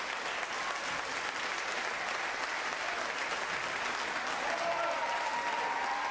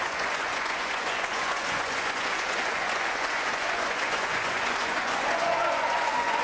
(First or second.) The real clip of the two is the first